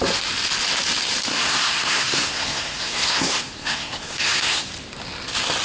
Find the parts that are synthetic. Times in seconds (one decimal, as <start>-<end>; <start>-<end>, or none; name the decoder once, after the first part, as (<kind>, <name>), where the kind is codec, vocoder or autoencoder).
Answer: 1.3-4.7 (codec, SNAC)